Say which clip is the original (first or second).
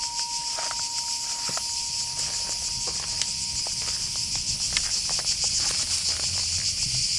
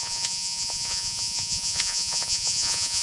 first